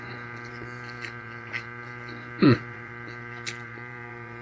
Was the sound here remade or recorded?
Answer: remade